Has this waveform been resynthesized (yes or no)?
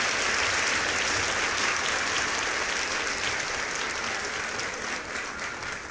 no